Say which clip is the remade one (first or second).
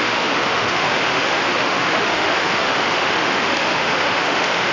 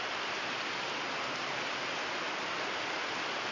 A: first